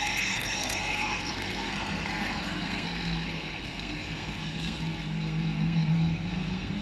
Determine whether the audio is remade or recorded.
remade